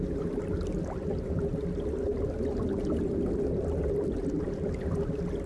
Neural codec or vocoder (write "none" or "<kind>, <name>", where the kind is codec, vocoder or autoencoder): none